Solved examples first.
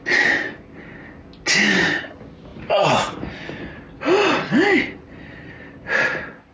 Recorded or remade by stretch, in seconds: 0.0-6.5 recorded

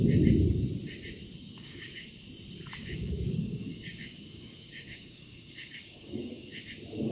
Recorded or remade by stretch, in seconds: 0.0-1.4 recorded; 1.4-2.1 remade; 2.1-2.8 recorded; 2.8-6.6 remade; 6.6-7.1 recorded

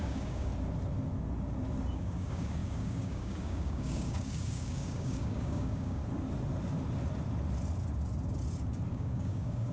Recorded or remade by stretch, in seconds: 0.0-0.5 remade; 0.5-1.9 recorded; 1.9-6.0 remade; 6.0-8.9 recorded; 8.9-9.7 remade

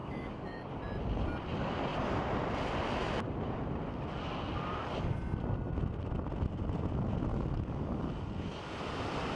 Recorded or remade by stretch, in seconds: 0.0-0.7 remade; 0.7-7.3 recorded; 7.3-8.1 remade; 8.1-9.4 recorded

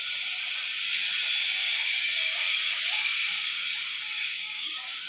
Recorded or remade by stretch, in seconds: 0.0-1.6 recorded; 1.6-5.1 remade

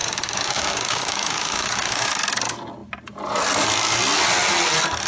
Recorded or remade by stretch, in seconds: 0.0-2.1 remade; 2.1-5.1 recorded

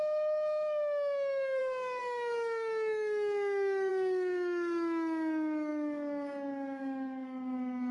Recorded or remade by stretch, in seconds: 0.0-7.9 remade

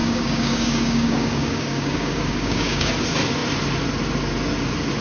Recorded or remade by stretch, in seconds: 0.0-2.9 remade; 2.9-5.0 recorded